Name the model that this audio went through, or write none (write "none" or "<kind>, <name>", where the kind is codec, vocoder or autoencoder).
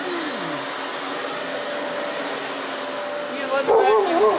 none